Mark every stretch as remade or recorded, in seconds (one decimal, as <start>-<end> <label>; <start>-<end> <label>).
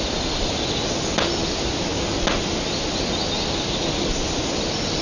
0.0-5.0 recorded